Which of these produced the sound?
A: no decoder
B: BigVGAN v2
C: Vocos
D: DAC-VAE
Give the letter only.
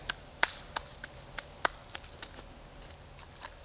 A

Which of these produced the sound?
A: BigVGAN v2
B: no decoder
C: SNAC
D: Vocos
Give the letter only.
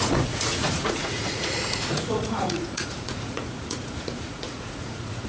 D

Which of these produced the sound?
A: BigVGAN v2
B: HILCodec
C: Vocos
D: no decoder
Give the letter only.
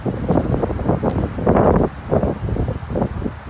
D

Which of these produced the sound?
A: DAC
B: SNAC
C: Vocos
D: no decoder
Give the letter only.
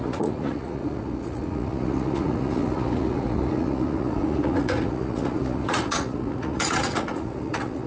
C